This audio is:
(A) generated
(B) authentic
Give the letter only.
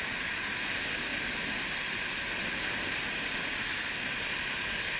B